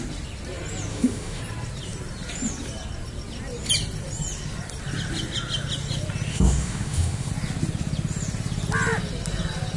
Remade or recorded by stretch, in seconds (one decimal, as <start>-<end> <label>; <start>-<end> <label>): 0.0-0.9 recorded; 0.9-1.4 remade; 1.4-6.3 recorded; 6.3-7.3 remade; 7.3-9.8 recorded